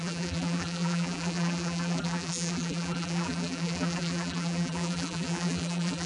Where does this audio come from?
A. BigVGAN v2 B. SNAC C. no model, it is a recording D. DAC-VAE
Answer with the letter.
A